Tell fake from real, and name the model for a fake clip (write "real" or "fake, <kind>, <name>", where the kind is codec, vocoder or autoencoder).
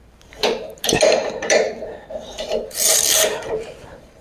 fake, vocoder, BigVGAN v2